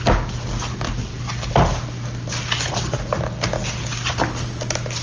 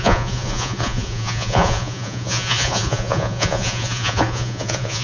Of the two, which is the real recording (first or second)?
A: first